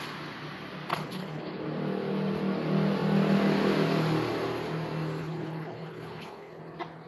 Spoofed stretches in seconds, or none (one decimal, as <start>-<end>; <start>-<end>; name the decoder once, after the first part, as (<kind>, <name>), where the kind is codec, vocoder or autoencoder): 0.9-1.6 (codec, HILCodec); 5.2-6.6